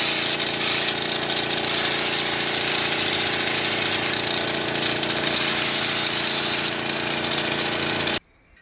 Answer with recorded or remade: recorded